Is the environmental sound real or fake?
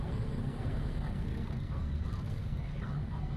fake